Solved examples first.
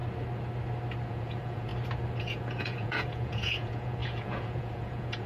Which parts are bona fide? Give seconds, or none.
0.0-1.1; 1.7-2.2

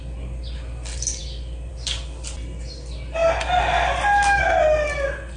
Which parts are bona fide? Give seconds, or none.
0.0-5.4

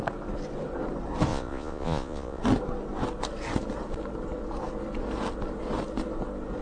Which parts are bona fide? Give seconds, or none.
0.0-1.3; 2.4-6.6

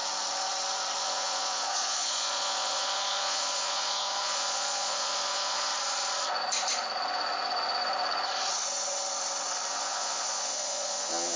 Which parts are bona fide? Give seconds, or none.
0.0-1.0; 5.7-9.7

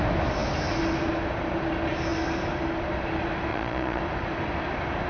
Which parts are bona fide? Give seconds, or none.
0.0-3.5; 4.0-5.1

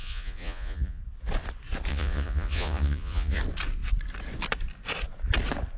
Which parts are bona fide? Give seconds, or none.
1.0-1.9; 3.4-5.8